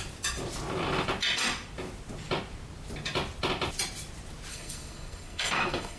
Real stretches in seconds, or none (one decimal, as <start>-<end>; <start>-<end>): 0.0-4.5

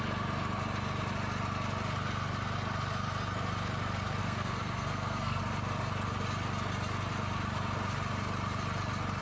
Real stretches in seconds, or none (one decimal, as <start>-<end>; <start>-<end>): 0.0-4.2; 5.4-9.2